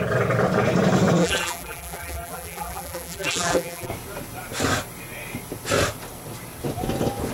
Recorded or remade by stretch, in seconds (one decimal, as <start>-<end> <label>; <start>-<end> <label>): 0.0-1.2 recorded; 1.2-3.9 remade; 3.9-7.3 recorded